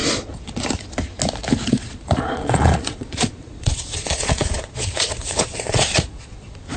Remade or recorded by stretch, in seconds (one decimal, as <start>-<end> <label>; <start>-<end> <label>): 0.0-1.7 recorded; 1.7-6.8 remade